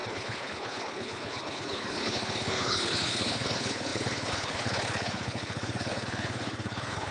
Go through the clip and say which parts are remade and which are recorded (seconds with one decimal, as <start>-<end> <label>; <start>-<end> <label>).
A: 0.0-7.1 remade